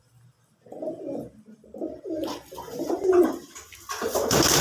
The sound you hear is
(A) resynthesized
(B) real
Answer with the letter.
B